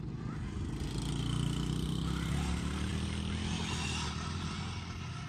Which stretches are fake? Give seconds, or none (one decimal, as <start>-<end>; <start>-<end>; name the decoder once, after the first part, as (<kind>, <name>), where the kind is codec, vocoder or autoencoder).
none